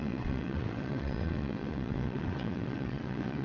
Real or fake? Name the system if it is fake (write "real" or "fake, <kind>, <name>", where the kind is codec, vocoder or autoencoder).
fake, vocoder, WaveNeXt